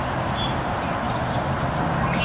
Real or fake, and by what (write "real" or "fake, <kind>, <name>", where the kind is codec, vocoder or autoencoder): real